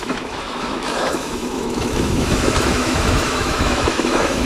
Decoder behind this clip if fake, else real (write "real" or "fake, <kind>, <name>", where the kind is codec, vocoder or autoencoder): fake, autoencoder, DAC-VAE